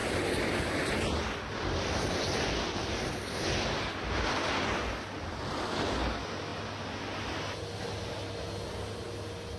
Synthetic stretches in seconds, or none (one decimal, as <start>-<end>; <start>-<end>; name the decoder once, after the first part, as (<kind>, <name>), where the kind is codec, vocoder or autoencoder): none